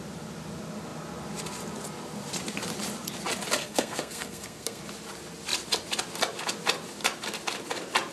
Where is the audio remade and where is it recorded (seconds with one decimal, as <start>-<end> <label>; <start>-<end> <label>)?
0.0-3.6 recorded; 3.6-4.8 remade; 4.8-8.1 recorded